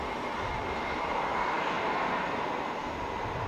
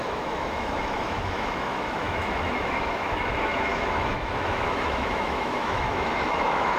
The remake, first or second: second